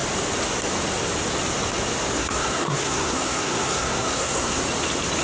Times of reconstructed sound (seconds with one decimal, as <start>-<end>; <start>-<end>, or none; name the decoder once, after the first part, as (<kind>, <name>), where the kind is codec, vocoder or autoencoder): 2.2-4.6 (codec, SNAC)

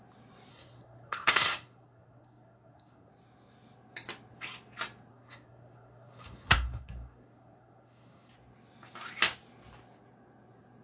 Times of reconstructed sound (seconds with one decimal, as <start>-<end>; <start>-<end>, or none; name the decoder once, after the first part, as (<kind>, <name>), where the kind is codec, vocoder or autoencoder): 0.5-3.1 (codec, SNAC); 5.1-8.3

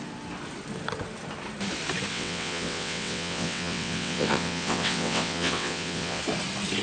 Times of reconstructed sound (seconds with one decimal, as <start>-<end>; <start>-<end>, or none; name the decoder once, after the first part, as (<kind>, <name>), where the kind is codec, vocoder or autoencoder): 2.1-6.2 (vocoder, WaveNeXt)

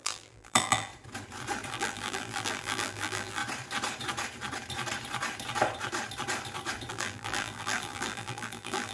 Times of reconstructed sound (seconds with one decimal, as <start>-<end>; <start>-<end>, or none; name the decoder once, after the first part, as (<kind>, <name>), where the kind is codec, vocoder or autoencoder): 0.0-0.9 (vocoder, BigVGAN v2); 1.7-3.4; 6.9-8.9

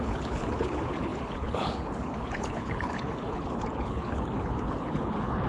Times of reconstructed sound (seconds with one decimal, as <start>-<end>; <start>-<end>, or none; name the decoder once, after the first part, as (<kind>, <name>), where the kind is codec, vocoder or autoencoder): 0.0-5.5 (codec, HILCodec)